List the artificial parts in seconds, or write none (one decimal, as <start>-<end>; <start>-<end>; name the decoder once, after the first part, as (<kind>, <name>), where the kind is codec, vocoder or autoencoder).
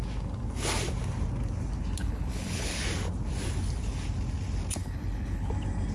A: 2.0-2.8 (codec, HILCodec); 4.8-5.5